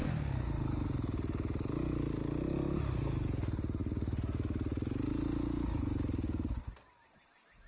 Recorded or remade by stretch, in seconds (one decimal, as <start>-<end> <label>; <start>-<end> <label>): 0.0-7.7 recorded